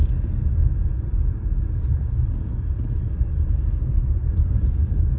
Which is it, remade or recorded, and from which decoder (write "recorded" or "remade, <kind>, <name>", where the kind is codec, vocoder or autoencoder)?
remade, vocoder, BigVGAN v2